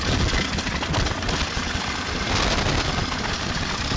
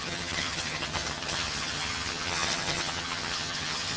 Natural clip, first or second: first